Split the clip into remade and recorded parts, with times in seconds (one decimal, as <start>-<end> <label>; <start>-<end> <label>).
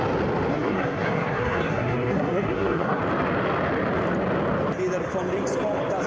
0.0-0.5 recorded; 0.5-3.0 remade; 3.0-6.1 recorded